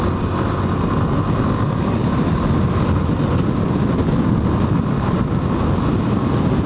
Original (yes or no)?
yes